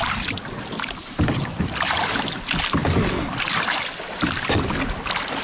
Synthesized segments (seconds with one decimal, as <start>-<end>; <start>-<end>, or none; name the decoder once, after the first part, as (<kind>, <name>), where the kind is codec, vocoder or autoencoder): none